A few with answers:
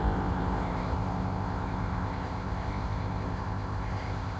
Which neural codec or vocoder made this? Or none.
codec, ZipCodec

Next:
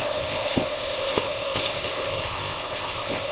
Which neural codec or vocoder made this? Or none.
codec, ZipCodec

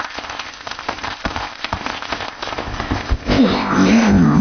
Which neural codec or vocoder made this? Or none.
codec, ZipCodec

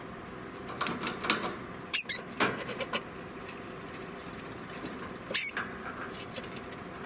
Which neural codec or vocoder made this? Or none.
none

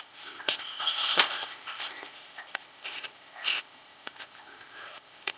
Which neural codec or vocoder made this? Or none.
codec, ZipCodec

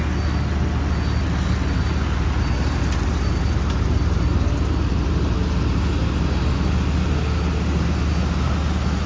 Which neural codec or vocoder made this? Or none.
none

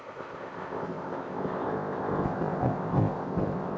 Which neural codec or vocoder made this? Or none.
codec, ZipCodec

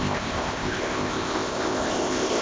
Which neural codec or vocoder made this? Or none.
codec, ZipCodec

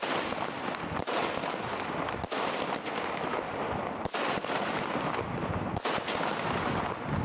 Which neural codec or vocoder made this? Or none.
none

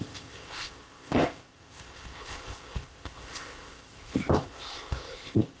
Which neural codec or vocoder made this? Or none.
codec, ZipCodec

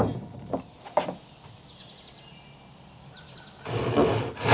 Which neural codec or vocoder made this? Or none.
none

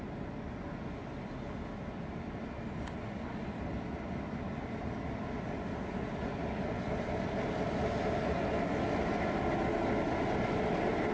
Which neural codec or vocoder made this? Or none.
none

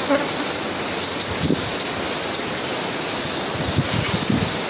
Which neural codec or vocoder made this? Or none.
none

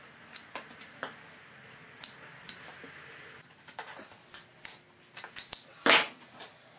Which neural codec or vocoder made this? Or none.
none